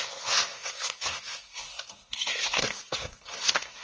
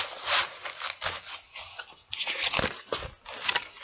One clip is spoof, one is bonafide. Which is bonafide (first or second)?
second